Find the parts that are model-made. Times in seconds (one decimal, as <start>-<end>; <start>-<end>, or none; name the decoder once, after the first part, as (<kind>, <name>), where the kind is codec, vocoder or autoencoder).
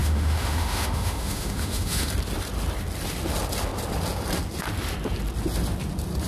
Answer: 0.0-2.1 (autoencoder, DAC-VAE)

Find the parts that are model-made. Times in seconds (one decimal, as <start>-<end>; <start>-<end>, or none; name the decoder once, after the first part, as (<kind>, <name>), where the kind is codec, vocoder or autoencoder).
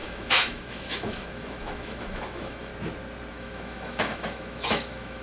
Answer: 0.0-2.7 (autoencoder, DAC-VAE); 3.3-5.2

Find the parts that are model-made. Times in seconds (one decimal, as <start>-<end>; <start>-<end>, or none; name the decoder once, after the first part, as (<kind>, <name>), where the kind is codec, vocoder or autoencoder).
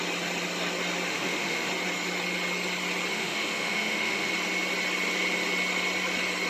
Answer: 1.1-1.7 (autoencoder, DAC-VAE); 3.1-4.3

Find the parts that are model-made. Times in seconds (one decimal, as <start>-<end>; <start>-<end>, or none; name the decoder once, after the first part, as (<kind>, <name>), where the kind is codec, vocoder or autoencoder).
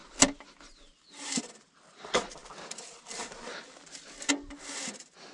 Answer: none